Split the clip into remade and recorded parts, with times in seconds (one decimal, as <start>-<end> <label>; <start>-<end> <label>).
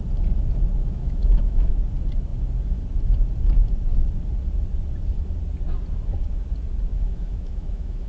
0.0-0.8 recorded; 0.8-1.7 remade; 1.7-6.9 recorded; 6.9-8.1 remade